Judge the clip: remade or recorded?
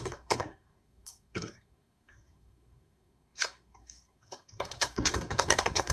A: remade